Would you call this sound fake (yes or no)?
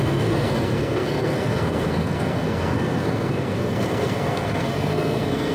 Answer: yes